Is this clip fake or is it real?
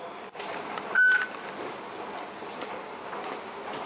real